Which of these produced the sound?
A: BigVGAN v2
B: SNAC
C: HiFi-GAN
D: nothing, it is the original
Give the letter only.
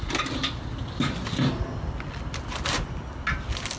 D